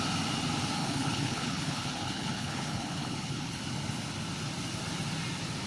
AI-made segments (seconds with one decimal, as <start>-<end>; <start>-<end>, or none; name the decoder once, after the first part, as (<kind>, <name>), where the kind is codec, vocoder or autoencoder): 0.8-3.6 (codec, HILCodec)